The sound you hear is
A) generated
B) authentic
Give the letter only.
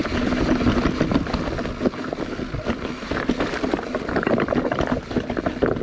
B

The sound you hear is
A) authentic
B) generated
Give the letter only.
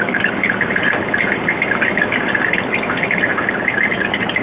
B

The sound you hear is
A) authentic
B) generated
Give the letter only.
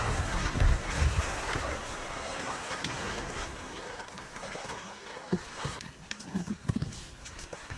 B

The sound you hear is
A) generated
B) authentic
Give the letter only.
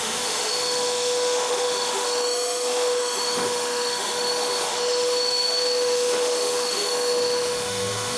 A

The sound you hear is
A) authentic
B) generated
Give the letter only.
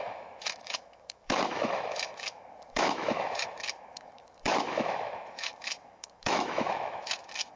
B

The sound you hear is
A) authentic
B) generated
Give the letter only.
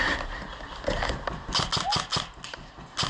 A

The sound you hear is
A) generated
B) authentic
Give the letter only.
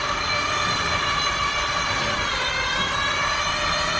B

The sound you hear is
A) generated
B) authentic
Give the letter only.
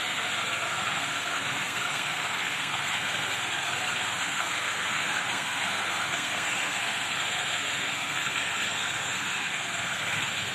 A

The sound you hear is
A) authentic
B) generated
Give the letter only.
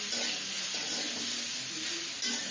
A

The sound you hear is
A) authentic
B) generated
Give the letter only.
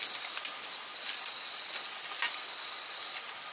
A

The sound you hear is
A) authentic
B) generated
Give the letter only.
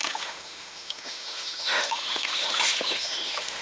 B